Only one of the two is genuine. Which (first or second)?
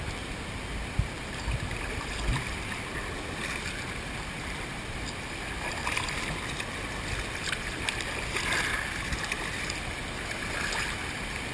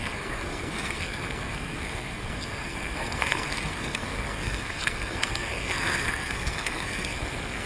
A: first